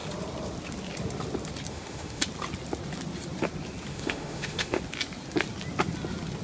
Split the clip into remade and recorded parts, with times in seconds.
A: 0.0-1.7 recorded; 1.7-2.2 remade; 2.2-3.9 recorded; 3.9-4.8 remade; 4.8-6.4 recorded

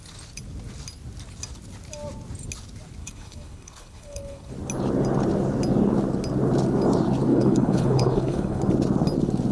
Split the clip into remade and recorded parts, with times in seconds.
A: 0.0-3.0 recorded; 3.0-4.5 remade; 4.5-7.3 recorded; 7.3-8.6 remade; 8.6-9.5 recorded

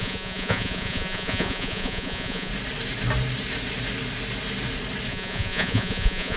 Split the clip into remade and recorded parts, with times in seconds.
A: 0.0-2.5 remade; 2.5-5.1 recorded; 5.1-6.4 remade

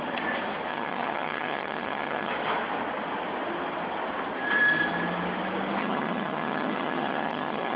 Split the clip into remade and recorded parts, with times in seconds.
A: 0.0-0.7 recorded; 0.7-2.3 remade; 2.3-5.8 recorded; 5.8-7.8 remade

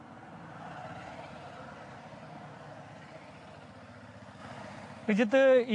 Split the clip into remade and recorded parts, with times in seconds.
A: 0.0-0.8 recorded; 0.8-2.6 remade; 2.6-5.7 recorded

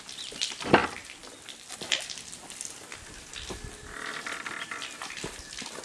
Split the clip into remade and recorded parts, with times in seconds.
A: 0.0-5.8 recorded

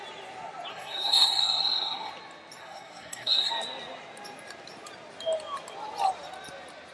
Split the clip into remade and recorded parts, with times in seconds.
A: 0.0-0.7 recorded; 0.7-2.1 remade; 2.1-2.6 recorded; 2.6-3.5 remade; 3.5-6.9 recorded

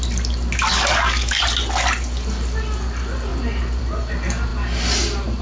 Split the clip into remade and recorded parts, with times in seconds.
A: 0.0-0.7 recorded; 0.7-1.4 remade; 1.4-5.4 recorded